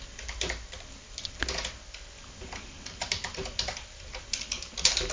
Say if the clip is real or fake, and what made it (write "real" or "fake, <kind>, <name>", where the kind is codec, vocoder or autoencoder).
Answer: real